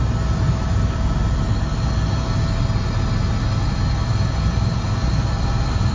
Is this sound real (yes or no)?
yes